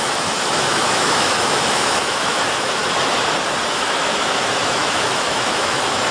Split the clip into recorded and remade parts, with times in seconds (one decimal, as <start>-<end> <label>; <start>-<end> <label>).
0.0-2.8 remade; 2.8-3.7 recorded; 3.7-6.1 remade